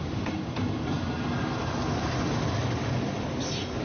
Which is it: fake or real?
real